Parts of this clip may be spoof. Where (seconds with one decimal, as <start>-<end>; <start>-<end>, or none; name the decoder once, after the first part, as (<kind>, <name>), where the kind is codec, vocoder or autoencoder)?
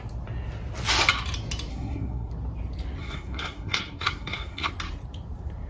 1.7-2.3 (codec, SNAC); 3.0-4.7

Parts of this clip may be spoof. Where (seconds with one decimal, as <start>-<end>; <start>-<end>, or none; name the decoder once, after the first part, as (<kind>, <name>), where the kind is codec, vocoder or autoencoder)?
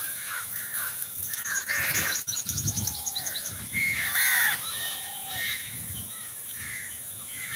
0.0-7.6 (autoencoder, DAC-VAE)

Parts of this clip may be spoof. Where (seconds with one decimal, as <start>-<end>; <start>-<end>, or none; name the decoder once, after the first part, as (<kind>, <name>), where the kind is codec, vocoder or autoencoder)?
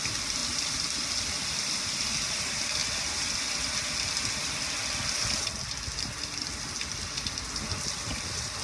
none